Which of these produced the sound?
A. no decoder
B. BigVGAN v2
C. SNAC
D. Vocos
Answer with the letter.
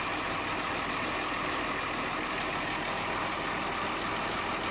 A